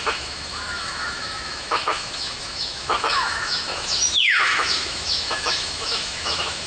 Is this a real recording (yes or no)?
no